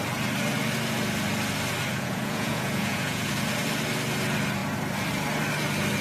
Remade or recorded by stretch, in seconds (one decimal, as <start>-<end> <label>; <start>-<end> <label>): 0.0-1.9 recorded; 1.9-3.3 remade; 3.3-6.0 recorded